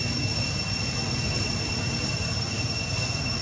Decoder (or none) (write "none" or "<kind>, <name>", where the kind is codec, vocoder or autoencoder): none